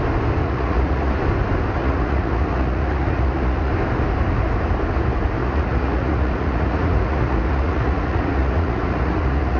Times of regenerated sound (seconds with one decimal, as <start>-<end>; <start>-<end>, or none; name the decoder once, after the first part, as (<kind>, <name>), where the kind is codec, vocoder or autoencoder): 0.4-1.1 (vocoder, Vocos); 1.8-3.7; 5.4-9.6